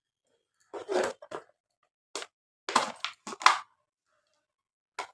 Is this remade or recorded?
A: recorded